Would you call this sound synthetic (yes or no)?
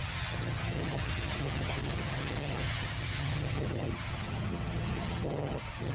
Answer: yes